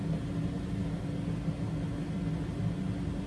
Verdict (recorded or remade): recorded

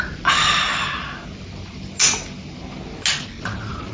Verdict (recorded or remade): recorded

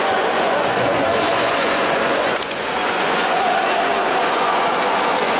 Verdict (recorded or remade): remade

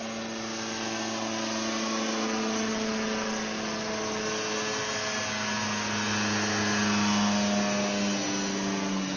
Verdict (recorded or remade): recorded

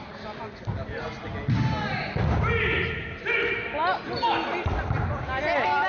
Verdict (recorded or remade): recorded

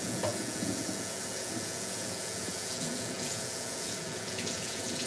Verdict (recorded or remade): remade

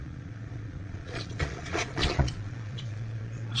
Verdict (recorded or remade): remade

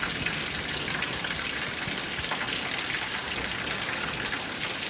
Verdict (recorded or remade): recorded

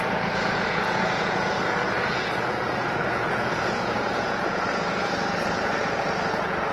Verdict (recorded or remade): remade